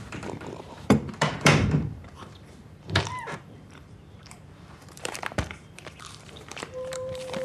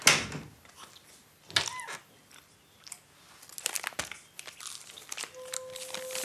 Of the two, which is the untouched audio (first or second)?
second